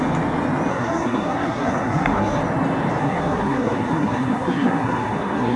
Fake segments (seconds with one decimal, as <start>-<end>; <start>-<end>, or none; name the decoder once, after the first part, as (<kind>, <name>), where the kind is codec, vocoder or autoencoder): 0.7-2.4 (codec, SNAC); 3.0-5.6